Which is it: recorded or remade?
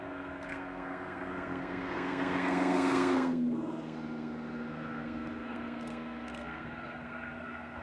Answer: remade